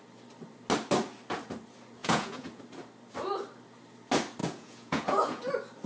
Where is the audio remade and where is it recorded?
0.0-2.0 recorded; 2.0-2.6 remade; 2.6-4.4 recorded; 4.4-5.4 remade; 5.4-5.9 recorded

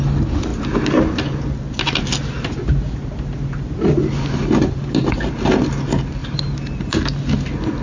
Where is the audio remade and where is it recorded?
0.0-7.8 recorded

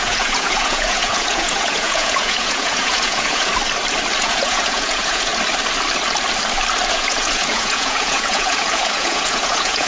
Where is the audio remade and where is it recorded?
0.0-3.5 remade; 3.5-4.2 recorded; 4.2-5.3 remade; 5.3-6.9 recorded; 6.9-9.9 remade

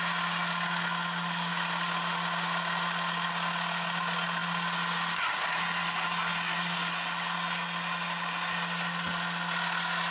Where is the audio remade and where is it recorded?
0.0-10.1 recorded

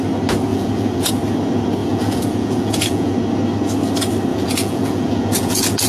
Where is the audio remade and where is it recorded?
0.0-0.5 recorded; 0.5-1.1 remade; 1.1-1.8 recorded; 1.8-3.1 remade; 3.1-4.3 recorded; 4.3-5.9 remade

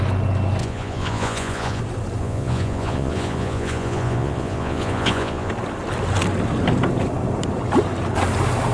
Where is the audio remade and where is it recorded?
0.0-0.6 recorded; 0.6-1.8 remade; 1.8-2.2 recorded; 2.2-5.5 remade; 5.5-8.7 recorded